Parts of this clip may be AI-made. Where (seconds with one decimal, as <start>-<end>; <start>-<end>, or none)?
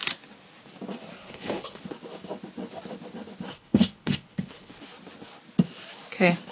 1.2-1.8; 3.5-4.8